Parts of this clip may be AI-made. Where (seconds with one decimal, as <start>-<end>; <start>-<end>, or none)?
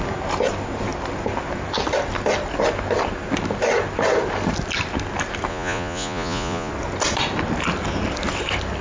5.5-6.7